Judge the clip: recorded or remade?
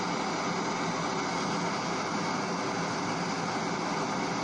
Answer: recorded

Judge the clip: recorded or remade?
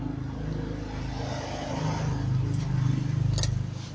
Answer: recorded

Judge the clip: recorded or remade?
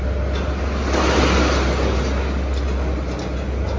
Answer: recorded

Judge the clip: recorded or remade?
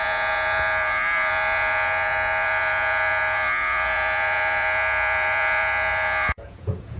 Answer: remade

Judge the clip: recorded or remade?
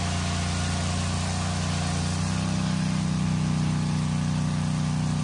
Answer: recorded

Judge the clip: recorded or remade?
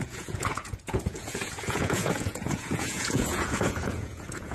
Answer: remade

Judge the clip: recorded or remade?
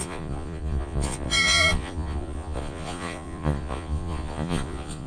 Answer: remade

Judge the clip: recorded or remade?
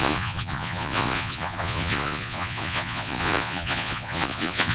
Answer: remade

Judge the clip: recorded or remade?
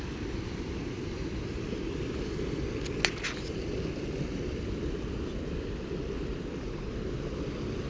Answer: recorded